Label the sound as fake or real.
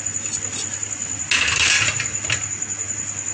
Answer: real